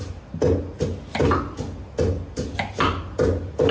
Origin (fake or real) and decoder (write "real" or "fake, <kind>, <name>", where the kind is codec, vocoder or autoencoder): real